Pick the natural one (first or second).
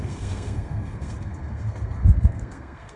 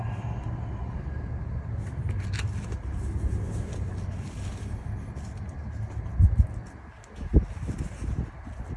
second